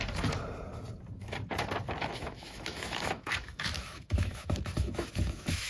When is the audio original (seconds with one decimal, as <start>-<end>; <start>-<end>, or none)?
0.0-2.0